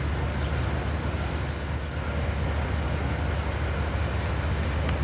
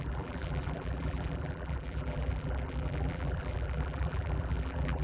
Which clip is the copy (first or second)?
second